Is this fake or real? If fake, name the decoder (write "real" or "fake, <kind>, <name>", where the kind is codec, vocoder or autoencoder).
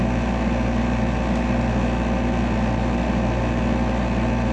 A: real